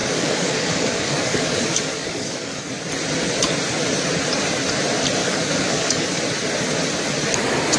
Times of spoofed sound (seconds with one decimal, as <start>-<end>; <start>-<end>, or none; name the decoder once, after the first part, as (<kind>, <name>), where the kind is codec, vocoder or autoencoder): 0.0-2.7 (codec, DAC); 5.2-6.2